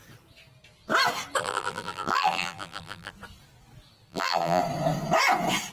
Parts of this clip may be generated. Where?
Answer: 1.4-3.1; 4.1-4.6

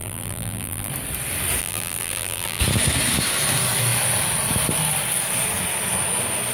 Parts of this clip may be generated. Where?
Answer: 0.0-0.9; 1.6-2.6